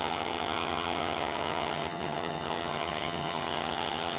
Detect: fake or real fake